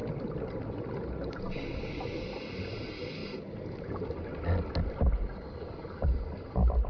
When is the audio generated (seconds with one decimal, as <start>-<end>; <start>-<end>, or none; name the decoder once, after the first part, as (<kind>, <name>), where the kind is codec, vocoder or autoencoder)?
none